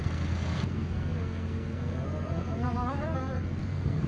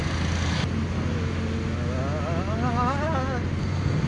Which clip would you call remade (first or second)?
first